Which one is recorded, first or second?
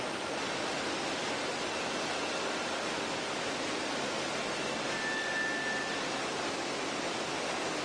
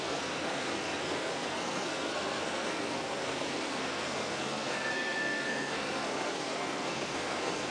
first